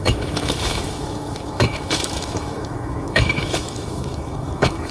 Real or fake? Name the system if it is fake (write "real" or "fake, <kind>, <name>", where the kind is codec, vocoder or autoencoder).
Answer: fake, autoencoder, DAC-VAE